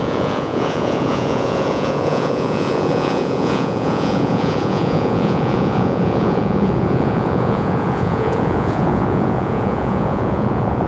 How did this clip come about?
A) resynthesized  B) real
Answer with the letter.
A